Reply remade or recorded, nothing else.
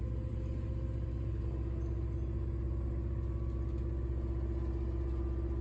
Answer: recorded